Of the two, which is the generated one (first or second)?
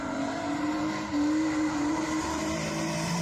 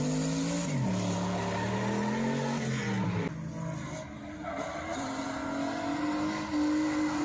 first